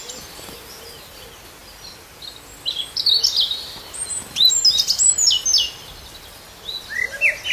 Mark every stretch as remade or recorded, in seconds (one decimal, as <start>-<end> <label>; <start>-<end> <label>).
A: 0.0-7.5 recorded